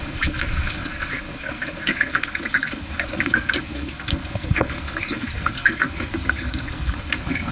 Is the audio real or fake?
fake